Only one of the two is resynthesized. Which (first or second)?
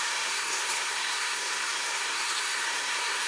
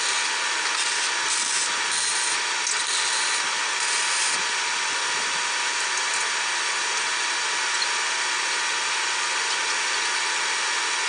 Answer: first